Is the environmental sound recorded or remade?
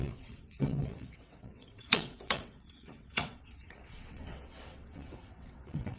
remade